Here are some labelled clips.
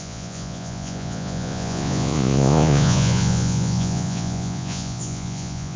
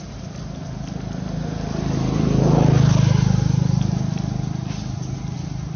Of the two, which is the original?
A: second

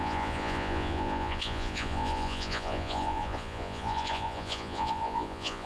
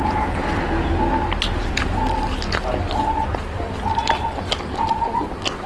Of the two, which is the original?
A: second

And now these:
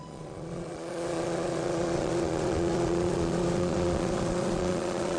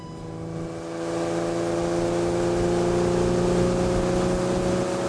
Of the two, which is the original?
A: second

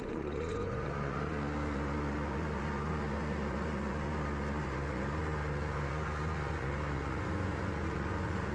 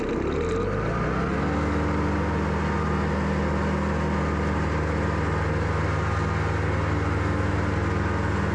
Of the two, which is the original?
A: second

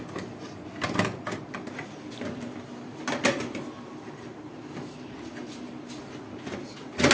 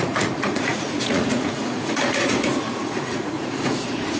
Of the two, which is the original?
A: first